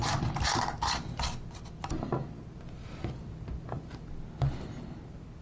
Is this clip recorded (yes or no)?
yes